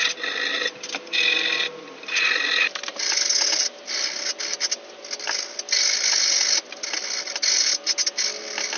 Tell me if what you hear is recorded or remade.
recorded